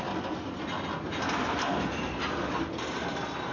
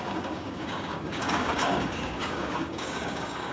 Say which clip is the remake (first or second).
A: second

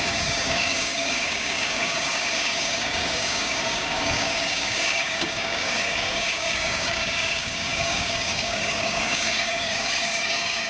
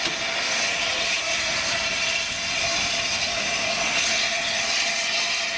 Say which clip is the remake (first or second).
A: first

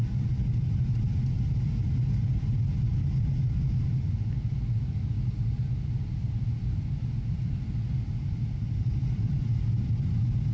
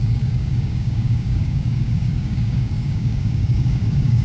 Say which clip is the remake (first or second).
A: second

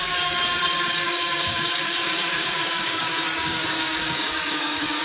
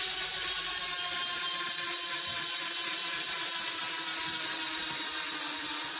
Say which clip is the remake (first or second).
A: first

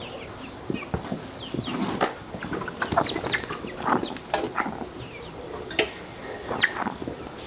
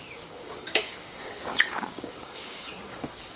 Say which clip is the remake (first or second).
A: second